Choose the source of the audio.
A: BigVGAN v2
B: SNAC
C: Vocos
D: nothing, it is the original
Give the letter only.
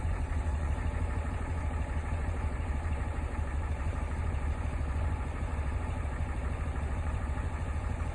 C